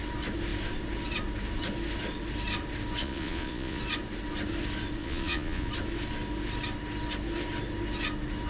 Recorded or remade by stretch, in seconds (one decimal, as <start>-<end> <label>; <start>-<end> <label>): 0.0-3.0 recorded; 3.0-3.8 remade; 3.8-5.0 recorded; 5.0-5.7 remade; 5.7-8.5 recorded